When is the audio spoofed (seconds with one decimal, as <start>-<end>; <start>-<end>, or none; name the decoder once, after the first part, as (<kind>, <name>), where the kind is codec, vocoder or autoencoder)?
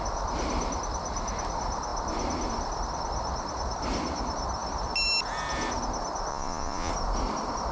6.3-6.9 (vocoder, Vocos)